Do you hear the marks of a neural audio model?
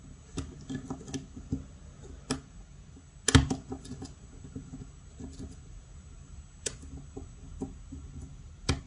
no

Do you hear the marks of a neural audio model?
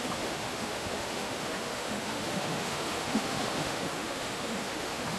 yes